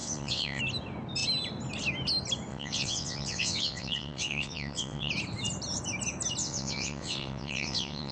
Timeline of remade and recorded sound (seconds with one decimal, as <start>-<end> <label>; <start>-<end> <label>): 0.0-0.6 remade; 0.6-2.5 recorded; 2.5-5.1 remade; 5.1-6.4 recorded; 6.4-8.1 remade